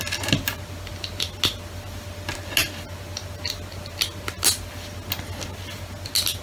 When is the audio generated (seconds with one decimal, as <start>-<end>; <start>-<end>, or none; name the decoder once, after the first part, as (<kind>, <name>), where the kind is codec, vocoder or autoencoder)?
none